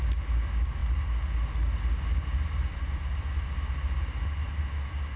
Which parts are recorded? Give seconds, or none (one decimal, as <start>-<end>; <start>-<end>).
0.0-5.2